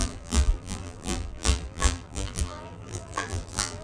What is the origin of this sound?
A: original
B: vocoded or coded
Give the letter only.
B